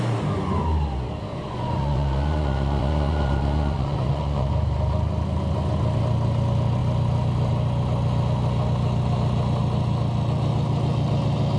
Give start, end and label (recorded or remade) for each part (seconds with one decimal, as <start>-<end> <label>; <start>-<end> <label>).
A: 0.0-1.3 recorded; 1.3-4.5 remade; 4.5-11.6 recorded